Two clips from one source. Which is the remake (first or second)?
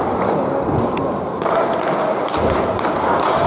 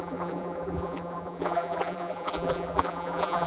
second